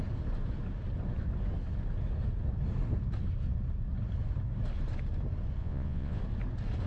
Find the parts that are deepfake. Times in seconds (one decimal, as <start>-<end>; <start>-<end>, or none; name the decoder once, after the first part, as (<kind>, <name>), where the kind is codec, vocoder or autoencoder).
5.6-6.2 (vocoder, Vocos)